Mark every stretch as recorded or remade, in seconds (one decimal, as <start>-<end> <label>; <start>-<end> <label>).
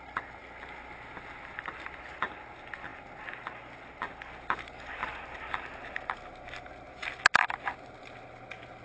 0.0-8.8 recorded